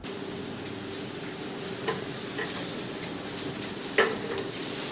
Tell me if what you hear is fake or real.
real